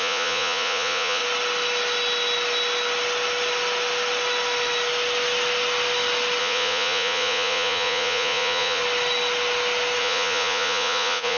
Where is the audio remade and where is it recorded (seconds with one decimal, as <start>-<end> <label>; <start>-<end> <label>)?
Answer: 0.0-1.2 remade; 1.2-6.4 recorded; 6.4-8.8 remade; 8.8-10.0 recorded; 10.0-11.4 remade